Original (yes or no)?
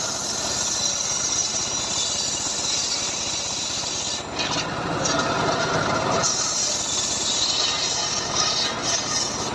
yes